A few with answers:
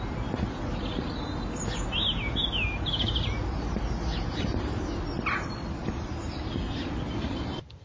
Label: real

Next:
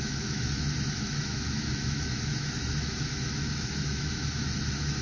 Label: fake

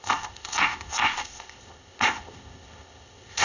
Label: fake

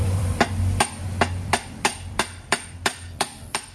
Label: fake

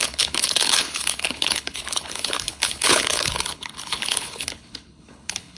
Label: fake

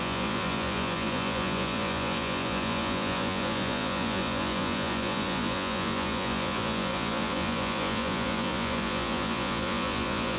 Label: fake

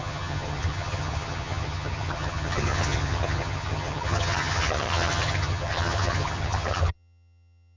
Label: fake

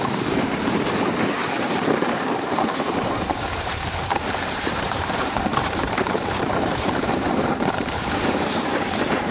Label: fake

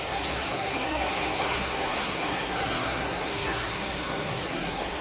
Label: fake